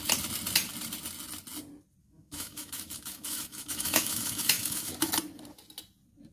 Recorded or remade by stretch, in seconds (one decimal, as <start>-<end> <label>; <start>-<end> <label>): 0.0-2.0 recorded; 2.0-5.1 remade; 5.1-6.3 recorded